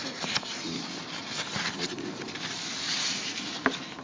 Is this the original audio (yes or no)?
yes